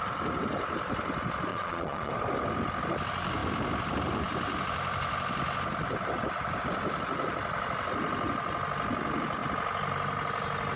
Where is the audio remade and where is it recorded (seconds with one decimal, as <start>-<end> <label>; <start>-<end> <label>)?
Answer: 0.0-1.5 recorded; 1.5-2.1 remade; 2.1-10.8 recorded

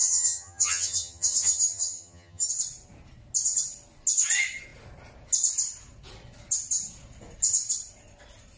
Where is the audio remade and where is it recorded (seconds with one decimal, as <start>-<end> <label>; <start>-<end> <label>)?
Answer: 0.0-2.5 remade; 2.5-8.6 recorded

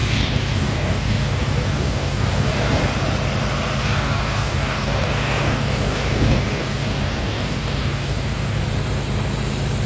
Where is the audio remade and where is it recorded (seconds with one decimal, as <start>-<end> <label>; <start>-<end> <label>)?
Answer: 0.0-2.8 remade; 2.8-3.8 recorded; 3.8-8.6 remade; 8.6-9.9 recorded

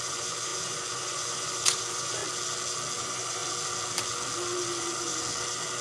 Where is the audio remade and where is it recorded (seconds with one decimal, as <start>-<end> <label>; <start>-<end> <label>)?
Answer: 0.0-2.2 remade; 2.2-3.0 recorded; 3.0-3.4 remade; 3.4-5.8 recorded

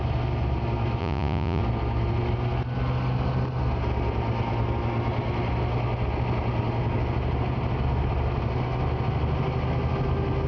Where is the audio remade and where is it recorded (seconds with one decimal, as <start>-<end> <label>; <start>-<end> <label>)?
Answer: 0.0-1.0 recorded; 1.0-1.6 remade; 1.6-10.5 recorded